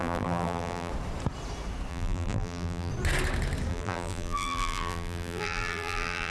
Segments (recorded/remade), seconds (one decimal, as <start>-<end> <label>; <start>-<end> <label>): 0.0-0.9 remade; 0.9-1.9 recorded; 1.9-2.9 remade; 2.9-3.7 recorded; 3.7-6.3 remade